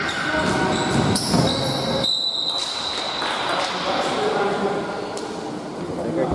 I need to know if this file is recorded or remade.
recorded